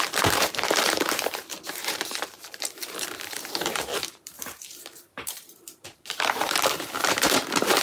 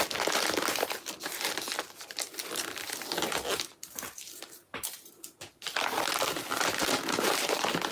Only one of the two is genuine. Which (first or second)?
second